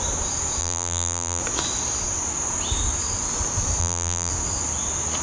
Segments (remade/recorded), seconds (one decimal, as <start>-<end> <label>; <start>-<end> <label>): 0.0-0.6 recorded; 0.6-1.4 remade; 1.4-3.8 recorded; 3.8-4.3 remade; 4.3-5.2 recorded